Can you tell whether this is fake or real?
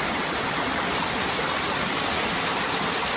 real